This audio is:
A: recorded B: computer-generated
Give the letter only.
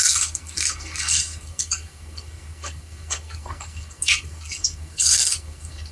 B